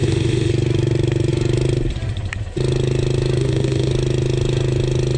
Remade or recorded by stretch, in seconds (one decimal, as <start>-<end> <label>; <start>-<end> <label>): 0.0-0.5 remade; 0.5-3.4 recorded; 3.4-3.9 remade; 3.9-5.2 recorded